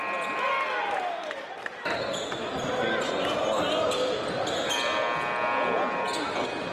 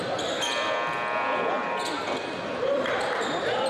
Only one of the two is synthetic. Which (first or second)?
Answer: second